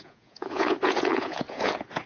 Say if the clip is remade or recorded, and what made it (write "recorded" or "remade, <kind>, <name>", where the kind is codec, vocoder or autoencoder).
remade, vocoder, Vocos